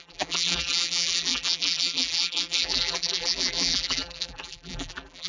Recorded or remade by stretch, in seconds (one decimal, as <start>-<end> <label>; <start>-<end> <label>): 0.0-5.3 remade